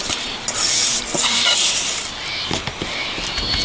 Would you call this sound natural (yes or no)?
yes